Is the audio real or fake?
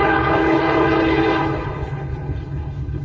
fake